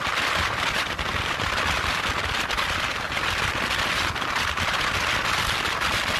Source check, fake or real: real